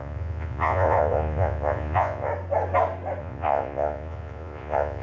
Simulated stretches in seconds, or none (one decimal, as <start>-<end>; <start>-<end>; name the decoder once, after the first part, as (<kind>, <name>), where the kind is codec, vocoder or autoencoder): 0.0-2.3 (vocoder, Vocos); 3.2-5.0